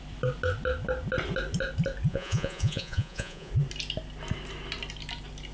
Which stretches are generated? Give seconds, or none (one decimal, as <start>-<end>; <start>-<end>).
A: 2.1-3.5